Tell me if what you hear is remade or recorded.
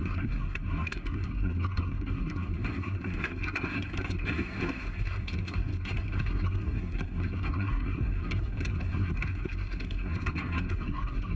remade